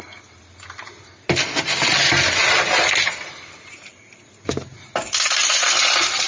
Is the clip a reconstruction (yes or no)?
no